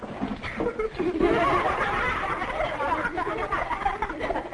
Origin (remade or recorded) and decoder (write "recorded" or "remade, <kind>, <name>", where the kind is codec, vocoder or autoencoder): recorded